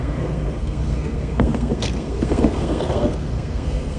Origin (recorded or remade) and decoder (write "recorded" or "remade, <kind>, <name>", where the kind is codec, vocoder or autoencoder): remade, codec, SNAC